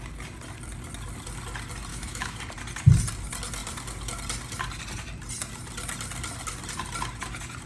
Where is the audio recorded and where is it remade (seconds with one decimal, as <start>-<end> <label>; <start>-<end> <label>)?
0.0-1.9 recorded; 1.9-2.4 remade; 2.4-7.7 recorded

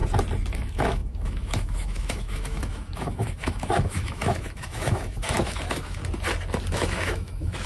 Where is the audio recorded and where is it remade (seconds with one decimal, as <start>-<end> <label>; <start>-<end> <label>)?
0.0-0.5 recorded; 0.5-6.0 remade; 6.0-6.7 recorded; 6.7-7.7 remade

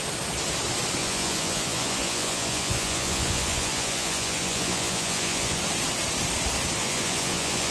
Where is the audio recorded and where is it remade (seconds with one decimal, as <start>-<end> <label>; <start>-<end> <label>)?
0.0-1.0 recorded; 1.0-5.6 remade; 5.6-6.8 recorded; 6.8-7.7 remade

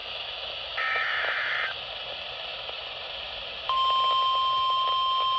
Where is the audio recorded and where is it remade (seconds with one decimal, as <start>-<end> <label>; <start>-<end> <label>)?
0.0-1.8 remade; 1.8-5.4 recorded

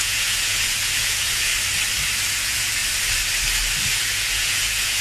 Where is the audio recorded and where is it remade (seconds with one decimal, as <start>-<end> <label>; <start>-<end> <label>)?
0.0-1.5 remade; 1.5-2.3 recorded; 2.3-2.8 remade; 2.8-3.9 recorded; 3.9-5.0 remade

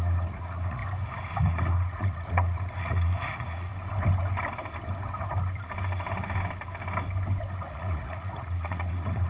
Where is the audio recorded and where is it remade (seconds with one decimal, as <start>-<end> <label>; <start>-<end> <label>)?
0.0-0.8 remade; 0.8-1.4 recorded; 1.4-3.7 remade; 3.7-7.6 recorded; 7.6-9.3 remade

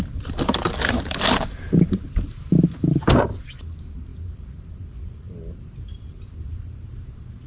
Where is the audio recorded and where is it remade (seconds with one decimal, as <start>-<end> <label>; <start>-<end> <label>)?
0.0-7.5 remade